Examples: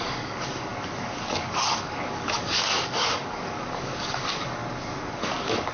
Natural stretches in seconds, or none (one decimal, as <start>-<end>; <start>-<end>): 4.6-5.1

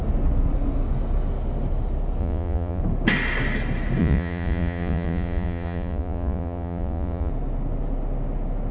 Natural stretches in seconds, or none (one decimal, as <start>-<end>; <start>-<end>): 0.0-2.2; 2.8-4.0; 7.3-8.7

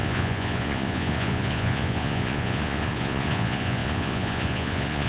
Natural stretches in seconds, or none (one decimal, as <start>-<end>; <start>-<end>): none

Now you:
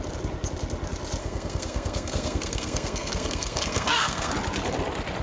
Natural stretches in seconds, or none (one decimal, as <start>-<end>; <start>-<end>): 0.0-1.2; 4.3-5.2

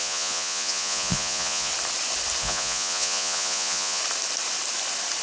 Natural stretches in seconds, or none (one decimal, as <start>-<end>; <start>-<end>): 1.7-2.4; 4.0-5.2

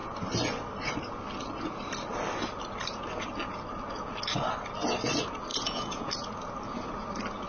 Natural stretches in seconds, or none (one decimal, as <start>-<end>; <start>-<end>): 0.0-5.5; 6.1-7.5